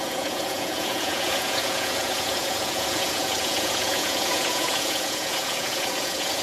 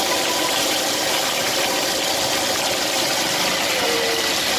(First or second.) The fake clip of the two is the first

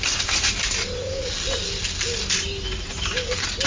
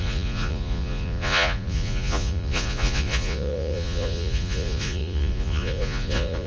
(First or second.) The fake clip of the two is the second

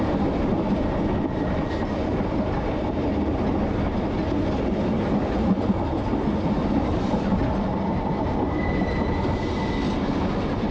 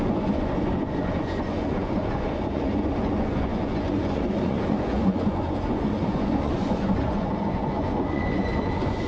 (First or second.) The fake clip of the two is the second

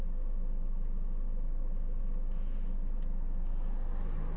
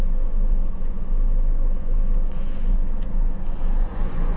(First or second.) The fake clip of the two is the second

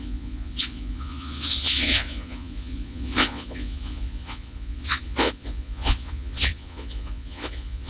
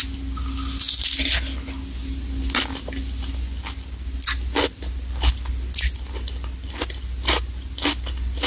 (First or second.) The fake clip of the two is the first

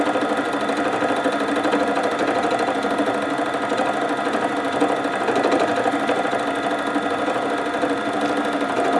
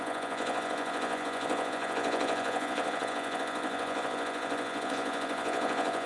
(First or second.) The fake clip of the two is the second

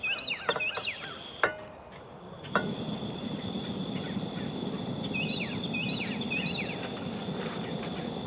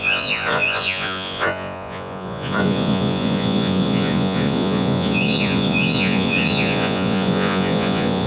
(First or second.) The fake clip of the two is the second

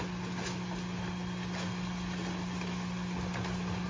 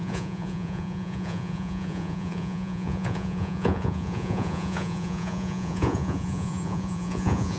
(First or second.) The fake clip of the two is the second